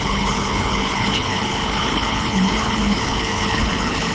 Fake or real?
fake